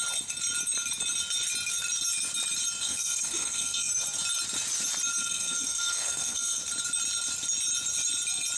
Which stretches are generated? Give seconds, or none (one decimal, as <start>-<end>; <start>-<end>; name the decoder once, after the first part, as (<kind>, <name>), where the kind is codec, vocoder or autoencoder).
2.8-3.9 (codec, SNAC); 5.2-6.6